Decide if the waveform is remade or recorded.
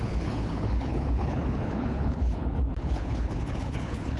remade